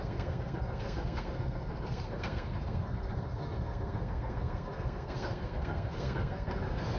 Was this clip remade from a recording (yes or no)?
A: yes